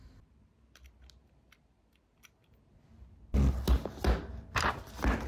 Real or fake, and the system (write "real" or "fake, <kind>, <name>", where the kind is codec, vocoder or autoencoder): real